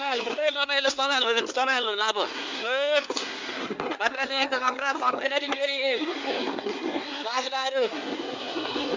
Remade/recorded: remade